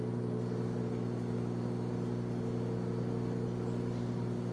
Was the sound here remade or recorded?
recorded